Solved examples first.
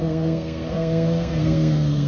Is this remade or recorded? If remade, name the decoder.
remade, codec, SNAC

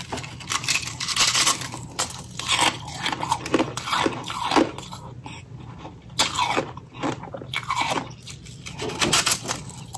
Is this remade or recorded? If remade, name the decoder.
recorded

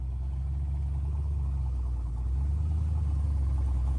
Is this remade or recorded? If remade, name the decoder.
recorded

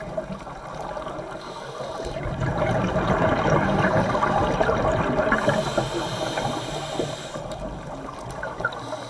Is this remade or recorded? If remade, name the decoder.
remade, vocoder, BigVGAN v2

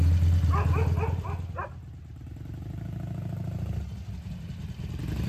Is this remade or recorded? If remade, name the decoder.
recorded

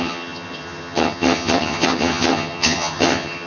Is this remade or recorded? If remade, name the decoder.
remade, vocoder, HiFi-GAN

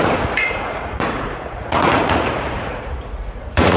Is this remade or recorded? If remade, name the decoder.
remade, vocoder, Vocos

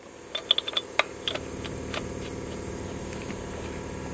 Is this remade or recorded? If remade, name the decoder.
recorded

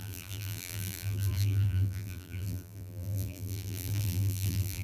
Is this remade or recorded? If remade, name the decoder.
remade, vocoder, BigVGAN v2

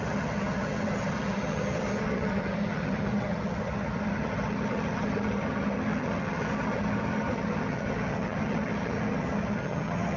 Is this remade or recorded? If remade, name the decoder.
remade, vocoder, HiFi-GAN